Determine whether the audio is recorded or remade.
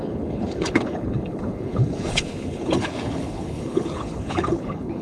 remade